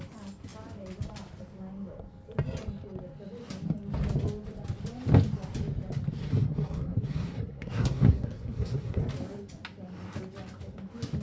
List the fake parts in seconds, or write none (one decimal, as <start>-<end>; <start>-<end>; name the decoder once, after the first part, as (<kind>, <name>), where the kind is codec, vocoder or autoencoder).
6.2-9.0 (codec, SNAC)